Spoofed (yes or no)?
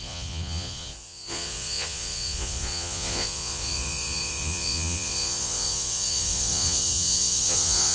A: yes